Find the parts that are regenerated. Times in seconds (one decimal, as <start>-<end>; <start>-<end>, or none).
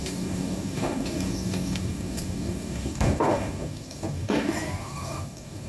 0.0-5.7